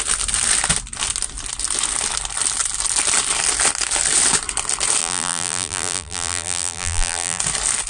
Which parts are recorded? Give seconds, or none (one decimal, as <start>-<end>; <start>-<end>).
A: 0.0-5.0; 7.4-7.9